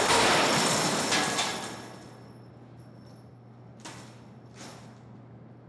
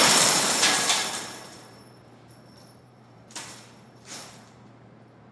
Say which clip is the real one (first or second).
first